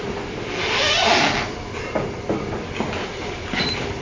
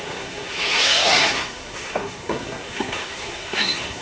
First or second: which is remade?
second